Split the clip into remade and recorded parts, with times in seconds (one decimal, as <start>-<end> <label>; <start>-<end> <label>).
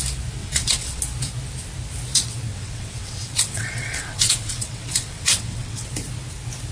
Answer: 0.0-0.4 recorded; 0.4-1.0 remade; 1.0-2.5 recorded; 2.5-5.9 remade; 5.9-6.7 recorded